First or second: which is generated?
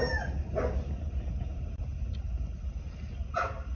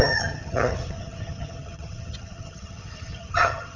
second